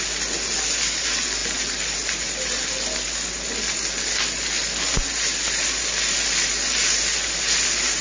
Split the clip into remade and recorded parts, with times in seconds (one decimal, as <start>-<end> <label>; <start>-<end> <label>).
0.0-8.0 recorded